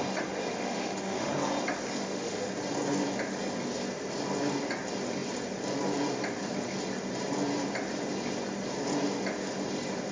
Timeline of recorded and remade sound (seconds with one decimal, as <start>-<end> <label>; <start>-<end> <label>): 0.0-0.5 recorded; 0.5-1.3 remade; 1.3-2.0 recorded; 2.0-2.5 remade; 2.5-10.1 recorded